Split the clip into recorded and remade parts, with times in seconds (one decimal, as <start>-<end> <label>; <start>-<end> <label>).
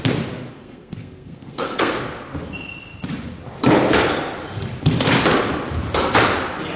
0.0-0.5 recorded; 0.5-1.9 remade; 1.9-6.8 recorded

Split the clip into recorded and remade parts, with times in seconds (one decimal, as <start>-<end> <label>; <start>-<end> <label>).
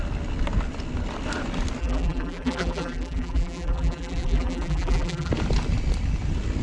0.0-1.8 recorded; 1.8-5.3 remade; 5.3-6.6 recorded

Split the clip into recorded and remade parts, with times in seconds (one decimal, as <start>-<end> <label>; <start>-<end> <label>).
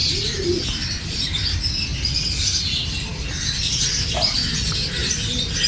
0.0-0.6 remade; 0.6-3.1 recorded; 3.1-3.7 remade; 3.7-5.7 recorded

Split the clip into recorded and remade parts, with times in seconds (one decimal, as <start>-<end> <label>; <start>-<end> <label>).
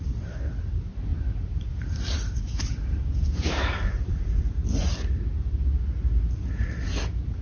0.0-1.1 recorded; 1.1-4.1 remade; 4.1-7.4 recorded